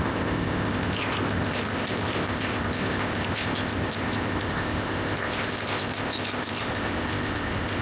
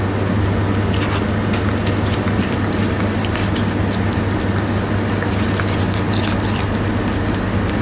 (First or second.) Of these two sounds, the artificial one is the first